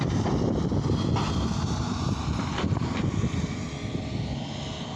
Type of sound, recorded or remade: recorded